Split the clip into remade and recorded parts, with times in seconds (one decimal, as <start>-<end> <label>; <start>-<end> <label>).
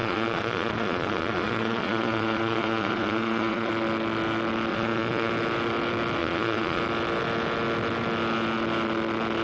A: 0.0-3.7 remade; 3.7-4.7 recorded; 4.7-5.3 remade; 5.3-6.2 recorded; 6.2-6.8 remade; 6.8-9.4 recorded